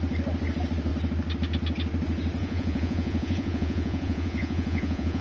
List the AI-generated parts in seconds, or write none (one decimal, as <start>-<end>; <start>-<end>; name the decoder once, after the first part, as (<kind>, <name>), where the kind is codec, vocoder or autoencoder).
2.4-5.2 (vocoder, Vocos)